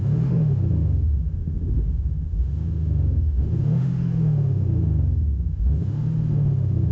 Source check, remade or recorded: remade